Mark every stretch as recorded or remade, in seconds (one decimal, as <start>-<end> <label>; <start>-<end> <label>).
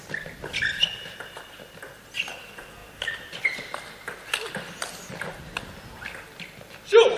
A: 0.0-7.2 recorded